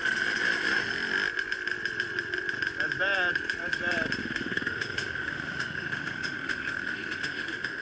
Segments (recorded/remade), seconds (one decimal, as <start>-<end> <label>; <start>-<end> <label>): 0.0-4.2 recorded; 4.2-7.8 remade